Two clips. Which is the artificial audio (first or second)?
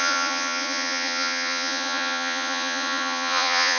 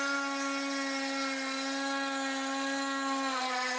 first